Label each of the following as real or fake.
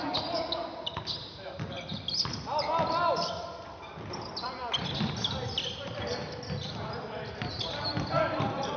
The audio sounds real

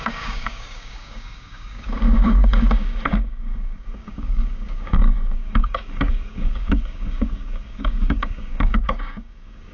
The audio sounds fake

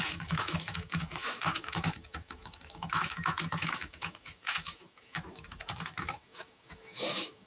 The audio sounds fake